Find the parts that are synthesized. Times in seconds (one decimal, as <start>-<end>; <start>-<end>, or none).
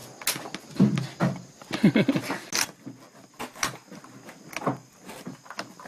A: none